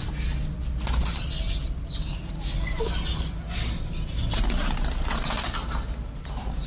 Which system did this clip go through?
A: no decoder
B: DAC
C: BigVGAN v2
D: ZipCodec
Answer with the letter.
A